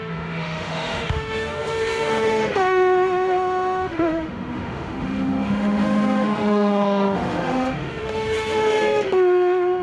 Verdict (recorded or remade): remade